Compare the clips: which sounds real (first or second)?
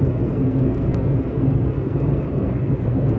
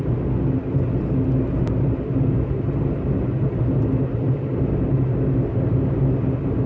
second